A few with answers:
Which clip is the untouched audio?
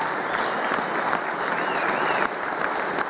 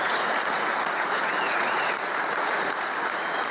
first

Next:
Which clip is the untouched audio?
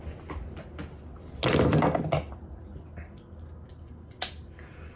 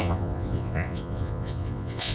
first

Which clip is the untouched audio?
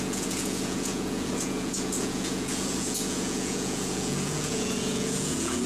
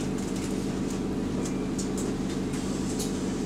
second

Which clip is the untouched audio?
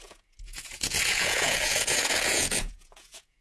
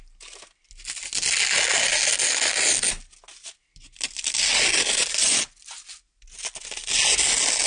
second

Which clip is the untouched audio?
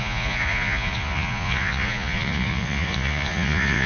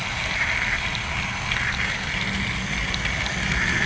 second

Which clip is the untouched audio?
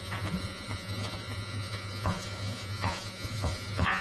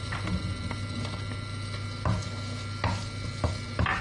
second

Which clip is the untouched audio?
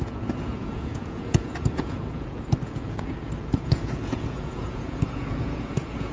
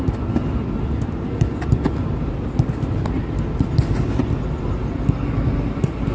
second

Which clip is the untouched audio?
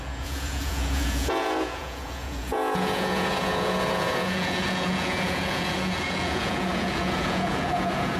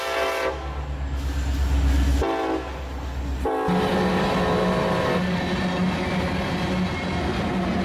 second